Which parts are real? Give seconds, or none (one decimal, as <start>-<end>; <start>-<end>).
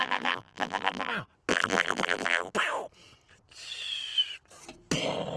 1.1-1.5; 2.5-5.4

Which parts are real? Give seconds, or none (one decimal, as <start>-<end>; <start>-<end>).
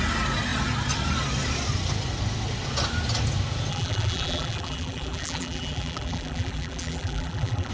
0.0-3.7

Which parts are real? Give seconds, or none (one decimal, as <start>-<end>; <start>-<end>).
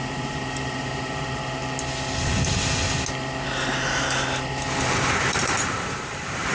1.6-4.9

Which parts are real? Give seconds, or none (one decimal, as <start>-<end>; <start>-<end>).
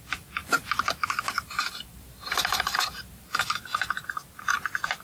0.0-0.4; 3.4-5.0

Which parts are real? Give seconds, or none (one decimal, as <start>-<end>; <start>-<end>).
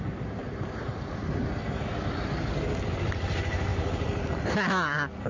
0.0-0.4; 1.4-5.3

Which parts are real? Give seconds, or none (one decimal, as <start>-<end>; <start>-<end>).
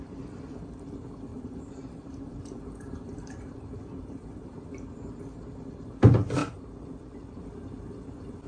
0.0-1.3; 4.5-8.5